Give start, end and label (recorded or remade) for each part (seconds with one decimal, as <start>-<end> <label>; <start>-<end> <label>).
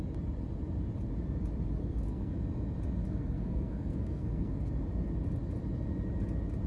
0.0-1.8 recorded; 1.8-2.4 remade; 2.4-3.0 recorded; 3.0-4.7 remade; 4.7-6.7 recorded